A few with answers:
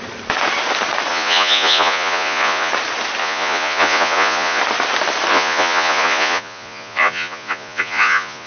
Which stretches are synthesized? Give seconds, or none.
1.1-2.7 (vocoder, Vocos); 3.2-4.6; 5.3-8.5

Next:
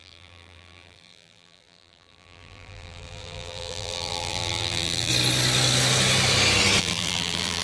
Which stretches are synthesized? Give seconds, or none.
0.0-5.1 (vocoder, BigVGAN v2); 6.8-7.6

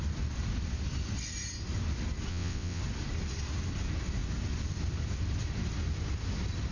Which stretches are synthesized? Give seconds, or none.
2.3-2.8 (vocoder, WaveNeXt)

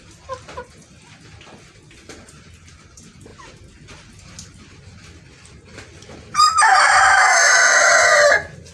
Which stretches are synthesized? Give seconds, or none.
none

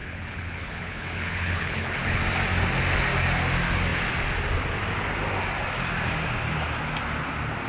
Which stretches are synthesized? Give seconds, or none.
0.0-2.2 (codec, HILCodec)

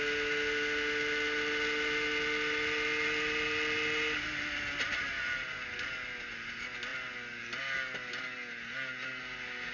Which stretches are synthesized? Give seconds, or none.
none